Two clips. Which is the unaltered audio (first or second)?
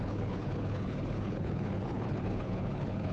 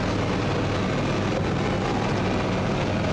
second